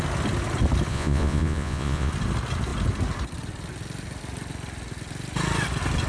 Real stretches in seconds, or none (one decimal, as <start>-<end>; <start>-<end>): 0.0-0.9; 2.1-6.1